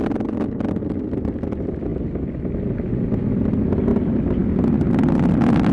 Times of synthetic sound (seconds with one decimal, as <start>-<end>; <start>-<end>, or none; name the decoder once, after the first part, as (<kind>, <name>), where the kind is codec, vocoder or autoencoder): none